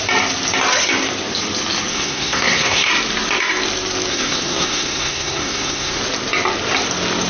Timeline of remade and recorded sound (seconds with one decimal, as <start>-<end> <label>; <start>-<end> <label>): 0.0-1.9 recorded; 1.9-2.9 remade; 2.9-4.1 recorded; 4.1-6.0 remade; 6.0-7.3 recorded